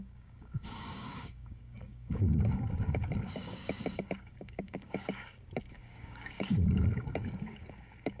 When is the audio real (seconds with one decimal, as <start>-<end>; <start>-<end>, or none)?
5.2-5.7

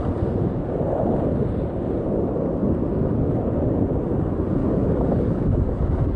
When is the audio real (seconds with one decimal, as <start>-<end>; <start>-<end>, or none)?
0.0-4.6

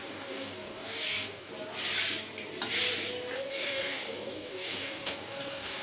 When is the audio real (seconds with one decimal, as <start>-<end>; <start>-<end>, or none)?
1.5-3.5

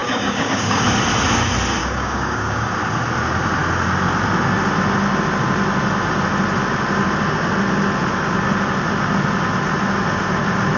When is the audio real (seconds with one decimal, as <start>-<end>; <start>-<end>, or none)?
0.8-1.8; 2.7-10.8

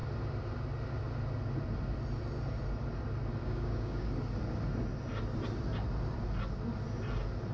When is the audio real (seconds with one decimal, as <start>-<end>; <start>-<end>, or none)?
0.0-3.4; 4.1-7.5

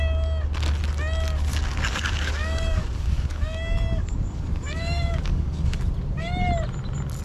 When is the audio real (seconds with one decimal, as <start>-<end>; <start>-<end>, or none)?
0.0-1.5; 5.8-7.2

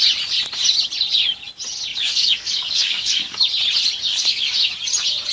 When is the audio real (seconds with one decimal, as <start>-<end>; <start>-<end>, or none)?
0.0-1.9; 3.4-4.1; 4.7-5.3